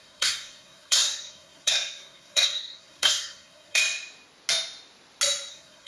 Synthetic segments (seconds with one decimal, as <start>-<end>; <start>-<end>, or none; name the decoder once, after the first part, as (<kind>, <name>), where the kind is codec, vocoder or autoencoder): 0.0-3.8 (codec, SNAC); 5.5-5.9